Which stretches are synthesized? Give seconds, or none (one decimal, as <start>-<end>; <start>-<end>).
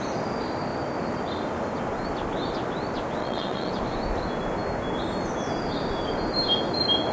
3.2-3.7